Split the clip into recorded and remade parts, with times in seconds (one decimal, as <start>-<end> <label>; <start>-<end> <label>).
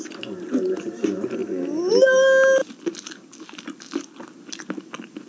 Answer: 0.0-5.3 recorded